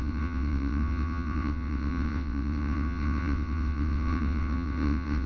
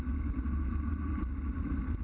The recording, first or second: second